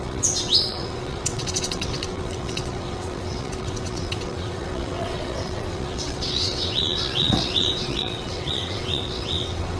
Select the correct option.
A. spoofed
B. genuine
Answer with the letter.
A